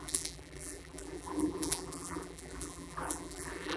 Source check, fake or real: fake